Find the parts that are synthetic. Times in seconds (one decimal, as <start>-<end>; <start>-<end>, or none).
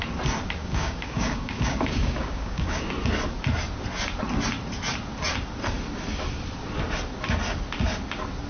0.6-2.9